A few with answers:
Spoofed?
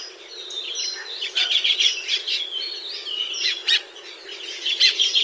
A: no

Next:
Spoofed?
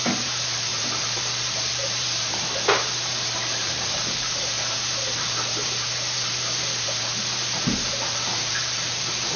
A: yes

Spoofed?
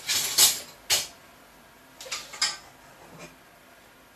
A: no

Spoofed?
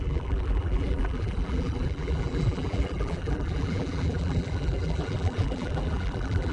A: yes